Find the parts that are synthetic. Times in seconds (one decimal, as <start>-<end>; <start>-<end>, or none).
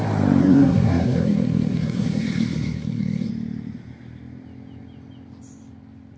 0.4-3.3